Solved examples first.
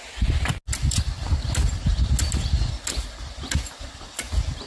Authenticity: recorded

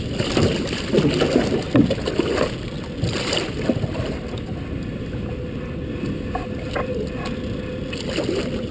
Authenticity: recorded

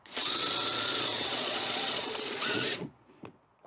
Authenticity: remade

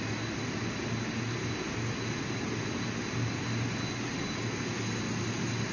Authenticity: recorded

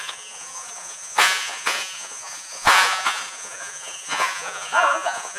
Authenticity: remade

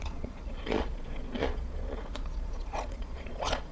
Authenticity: remade